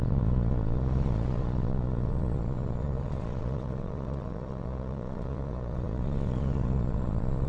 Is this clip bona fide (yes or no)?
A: no